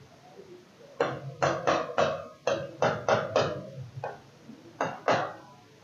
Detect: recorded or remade recorded